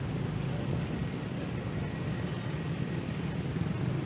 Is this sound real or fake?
real